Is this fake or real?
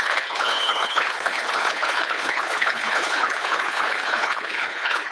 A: fake